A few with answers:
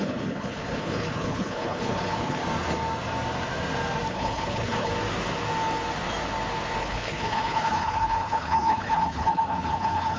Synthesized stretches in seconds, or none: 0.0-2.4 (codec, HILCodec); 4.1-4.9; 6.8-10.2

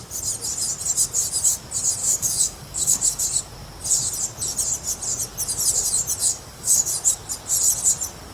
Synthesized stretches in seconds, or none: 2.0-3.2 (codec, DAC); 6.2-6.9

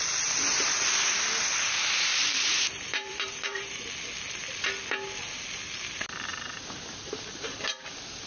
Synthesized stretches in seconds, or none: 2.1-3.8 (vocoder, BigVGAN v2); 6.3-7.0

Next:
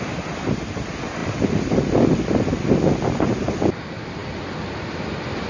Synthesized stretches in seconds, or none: none

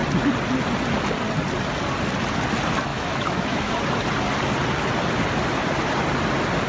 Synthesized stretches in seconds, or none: 2.9-3.7 (autoencoder, DAC-VAE)